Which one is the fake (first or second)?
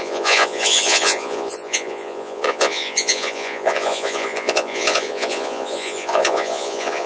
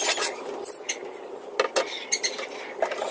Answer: first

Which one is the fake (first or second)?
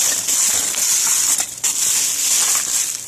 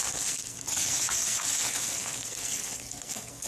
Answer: second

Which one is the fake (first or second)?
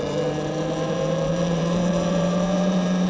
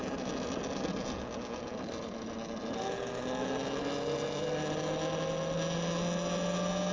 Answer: first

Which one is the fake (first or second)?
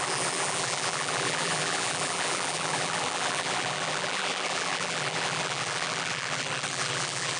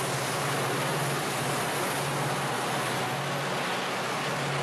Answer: first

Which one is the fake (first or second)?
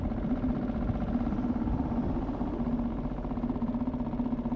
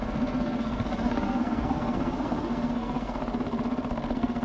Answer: second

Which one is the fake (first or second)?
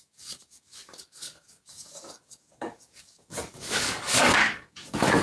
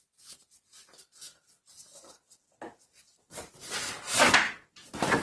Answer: first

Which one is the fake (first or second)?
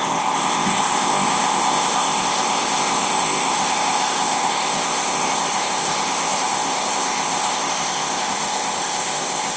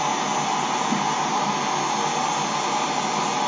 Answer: first